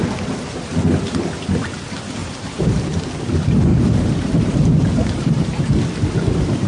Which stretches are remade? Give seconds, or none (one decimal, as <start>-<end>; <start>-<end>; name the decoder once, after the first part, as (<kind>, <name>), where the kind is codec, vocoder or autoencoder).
2.2-3.0 (vocoder, BigVGAN v2); 3.7-5.7